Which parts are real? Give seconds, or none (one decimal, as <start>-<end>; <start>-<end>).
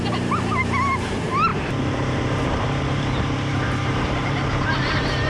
none